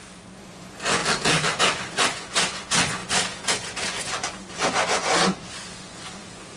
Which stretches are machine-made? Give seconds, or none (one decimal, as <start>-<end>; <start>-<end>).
0.0-1.0; 1.6-6.6